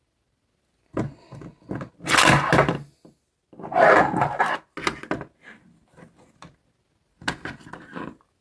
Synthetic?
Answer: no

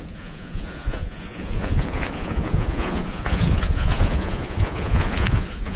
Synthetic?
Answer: yes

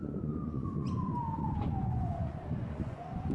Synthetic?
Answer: yes